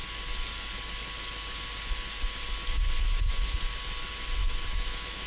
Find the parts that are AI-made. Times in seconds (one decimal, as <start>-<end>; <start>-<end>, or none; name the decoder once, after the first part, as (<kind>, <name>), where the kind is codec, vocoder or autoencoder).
4.4-5.3 (autoencoder, DAC-VAE)